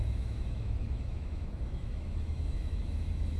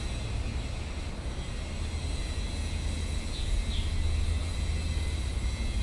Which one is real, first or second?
second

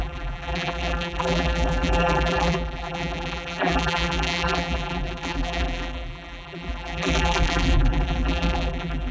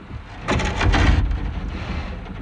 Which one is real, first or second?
second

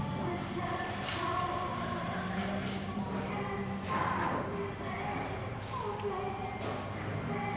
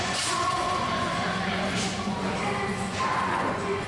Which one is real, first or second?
first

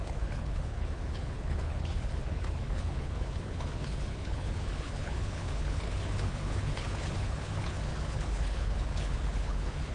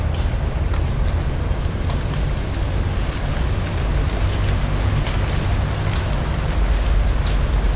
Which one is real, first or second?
second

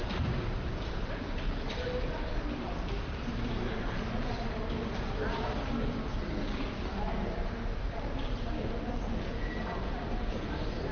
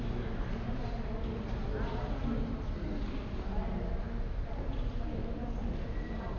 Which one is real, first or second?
second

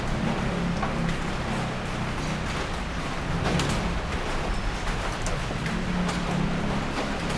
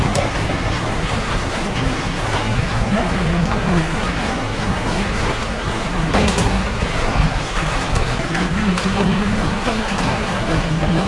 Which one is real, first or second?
first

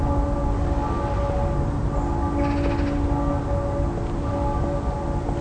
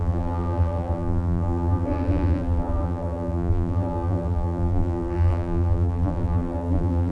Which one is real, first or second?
first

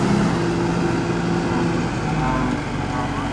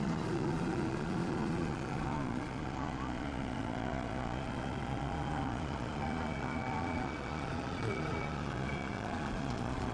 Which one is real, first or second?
first